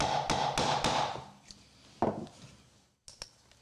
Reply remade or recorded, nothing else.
recorded